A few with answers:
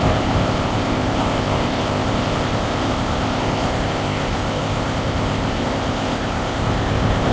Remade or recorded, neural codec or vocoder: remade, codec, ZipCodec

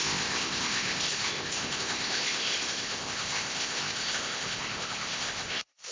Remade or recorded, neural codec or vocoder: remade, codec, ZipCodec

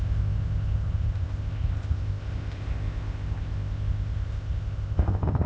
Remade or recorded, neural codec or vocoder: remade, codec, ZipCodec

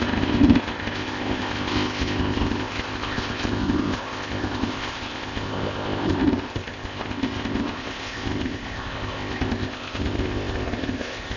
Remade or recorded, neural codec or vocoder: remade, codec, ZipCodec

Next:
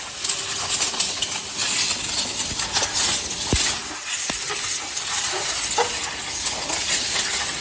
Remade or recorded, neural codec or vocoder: recorded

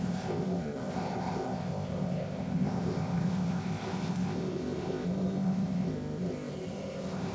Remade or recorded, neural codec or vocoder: remade, codec, ZipCodec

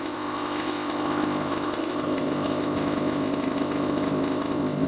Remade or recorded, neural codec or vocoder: remade, codec, ZipCodec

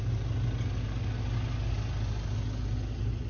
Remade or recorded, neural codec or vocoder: recorded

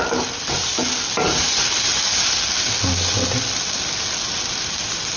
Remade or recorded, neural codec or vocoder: recorded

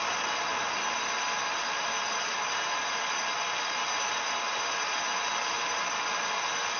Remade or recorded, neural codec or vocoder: recorded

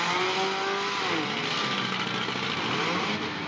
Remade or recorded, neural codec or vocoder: recorded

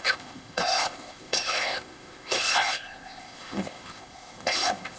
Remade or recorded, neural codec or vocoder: remade, codec, ZipCodec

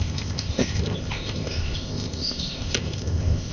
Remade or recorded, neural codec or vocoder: remade, codec, ZipCodec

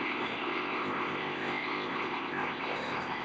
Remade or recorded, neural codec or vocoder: remade, codec, ZipCodec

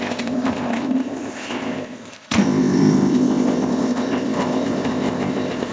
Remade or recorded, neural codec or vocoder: remade, codec, ZipCodec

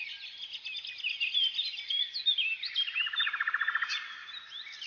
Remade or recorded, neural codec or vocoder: recorded